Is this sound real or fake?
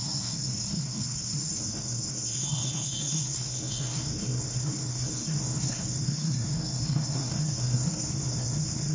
fake